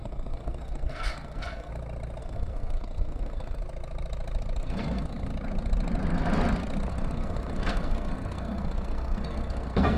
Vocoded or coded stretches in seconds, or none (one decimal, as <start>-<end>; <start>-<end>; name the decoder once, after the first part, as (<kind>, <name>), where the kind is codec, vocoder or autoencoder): 0.0-1.7 (codec, SNAC); 2.2-3.6; 4.6-5.3; 6.9-10.0